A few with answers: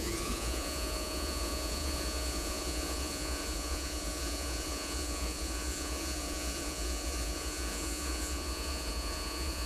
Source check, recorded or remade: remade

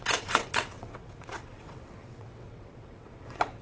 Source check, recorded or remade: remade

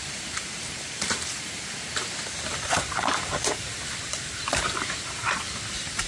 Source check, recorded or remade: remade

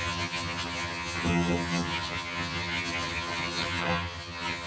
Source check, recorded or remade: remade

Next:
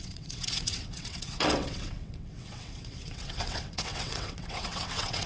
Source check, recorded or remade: remade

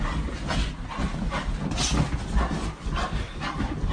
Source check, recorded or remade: recorded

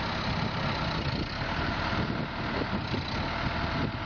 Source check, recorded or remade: recorded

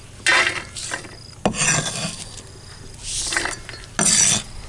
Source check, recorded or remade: recorded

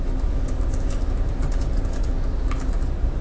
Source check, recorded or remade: recorded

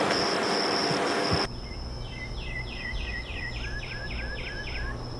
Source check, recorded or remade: recorded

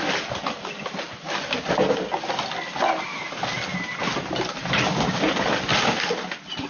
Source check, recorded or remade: recorded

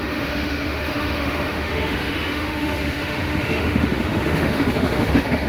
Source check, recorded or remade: remade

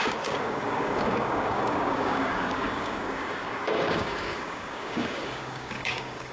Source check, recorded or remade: remade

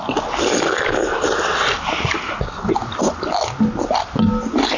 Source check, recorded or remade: recorded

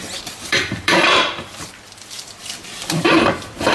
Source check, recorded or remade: remade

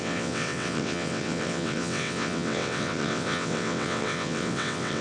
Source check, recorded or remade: remade